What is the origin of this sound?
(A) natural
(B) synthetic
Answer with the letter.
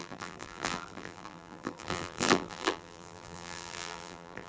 B